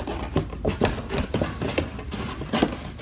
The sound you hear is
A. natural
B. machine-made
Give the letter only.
A